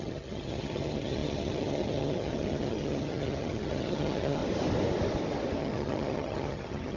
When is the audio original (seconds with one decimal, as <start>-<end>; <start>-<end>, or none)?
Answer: 4.4-5.6